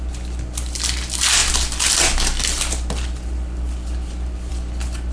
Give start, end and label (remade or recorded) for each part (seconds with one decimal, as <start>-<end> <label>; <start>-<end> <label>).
0.0-5.1 recorded